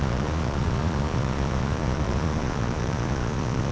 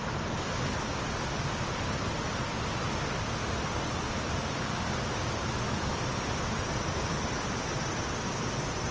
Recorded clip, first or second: second